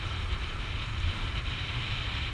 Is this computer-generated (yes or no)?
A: yes